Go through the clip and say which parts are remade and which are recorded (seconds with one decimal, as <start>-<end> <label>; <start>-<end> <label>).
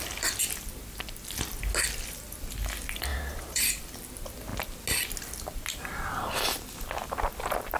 0.0-3.1 recorded; 3.1-3.8 remade; 3.8-7.8 recorded